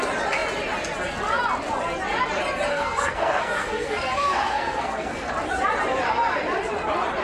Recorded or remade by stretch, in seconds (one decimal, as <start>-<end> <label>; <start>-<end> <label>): 0.0-2.7 recorded; 2.7-5.3 remade; 5.3-7.2 recorded